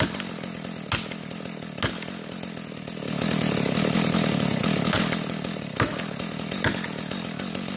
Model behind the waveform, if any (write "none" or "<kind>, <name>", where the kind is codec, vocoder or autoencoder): none